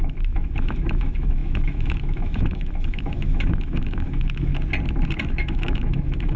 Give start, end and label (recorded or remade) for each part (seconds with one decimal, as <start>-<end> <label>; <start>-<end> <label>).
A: 0.0-4.5 remade; 4.5-5.2 recorded; 5.2-6.4 remade